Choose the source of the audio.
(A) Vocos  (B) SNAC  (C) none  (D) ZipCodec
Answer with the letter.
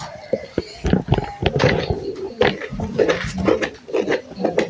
C